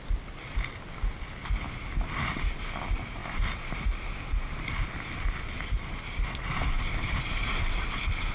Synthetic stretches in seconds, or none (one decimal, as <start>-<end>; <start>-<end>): none